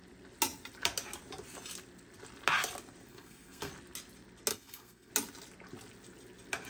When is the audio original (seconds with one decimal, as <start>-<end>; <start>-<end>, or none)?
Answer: 0.0-3.1; 3.7-4.5; 5.1-6.7